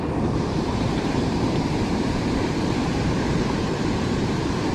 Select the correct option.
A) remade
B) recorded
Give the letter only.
A